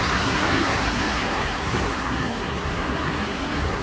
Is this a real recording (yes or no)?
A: no